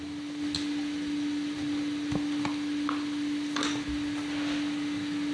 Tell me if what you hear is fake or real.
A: real